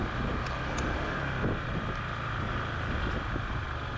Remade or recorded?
recorded